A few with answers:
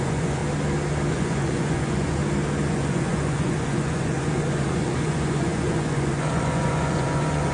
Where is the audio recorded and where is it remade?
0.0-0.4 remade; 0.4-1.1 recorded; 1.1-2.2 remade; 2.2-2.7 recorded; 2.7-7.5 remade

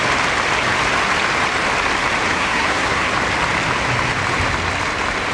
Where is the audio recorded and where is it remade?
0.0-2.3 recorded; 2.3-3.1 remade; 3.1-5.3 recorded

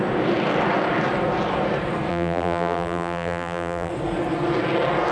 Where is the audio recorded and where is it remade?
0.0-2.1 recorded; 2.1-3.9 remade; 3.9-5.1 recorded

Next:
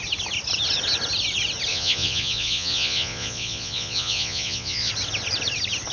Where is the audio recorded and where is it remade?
0.0-1.7 recorded; 1.7-4.9 remade; 4.9-5.9 recorded

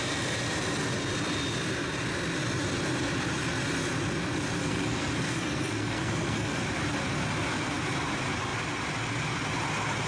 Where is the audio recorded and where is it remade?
0.0-4.6 recorded; 4.6-6.6 remade; 6.6-10.1 recorded